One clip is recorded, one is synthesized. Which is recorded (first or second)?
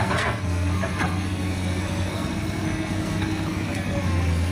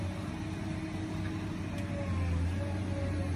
second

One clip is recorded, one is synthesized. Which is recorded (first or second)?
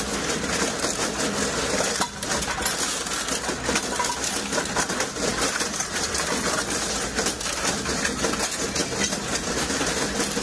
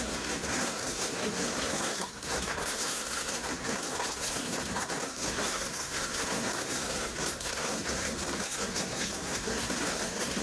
first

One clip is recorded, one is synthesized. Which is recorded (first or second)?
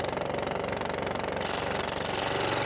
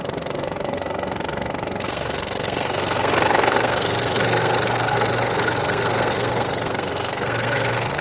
first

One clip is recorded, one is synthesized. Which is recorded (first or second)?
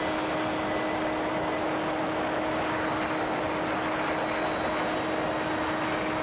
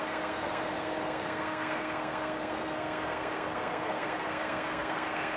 first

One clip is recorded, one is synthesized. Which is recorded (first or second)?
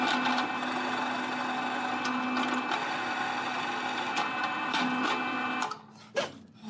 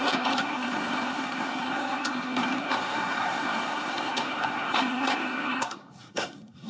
first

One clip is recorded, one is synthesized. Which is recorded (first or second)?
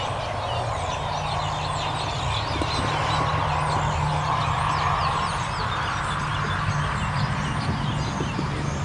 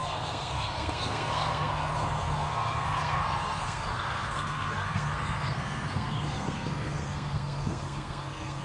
first